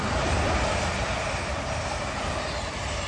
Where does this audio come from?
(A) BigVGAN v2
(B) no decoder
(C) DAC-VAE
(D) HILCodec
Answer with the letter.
B